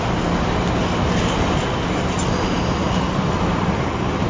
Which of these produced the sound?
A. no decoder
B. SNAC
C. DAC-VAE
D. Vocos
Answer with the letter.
A